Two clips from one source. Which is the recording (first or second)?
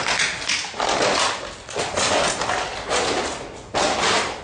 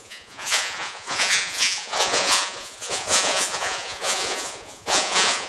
first